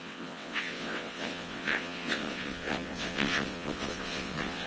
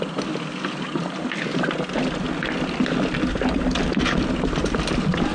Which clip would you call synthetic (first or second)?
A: first